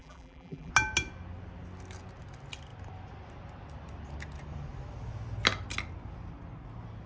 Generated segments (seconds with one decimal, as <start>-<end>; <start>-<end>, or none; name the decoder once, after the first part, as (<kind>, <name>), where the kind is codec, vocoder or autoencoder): 0.0-0.7 (vocoder, BigVGAN v2)